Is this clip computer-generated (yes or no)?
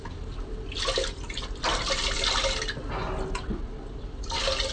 no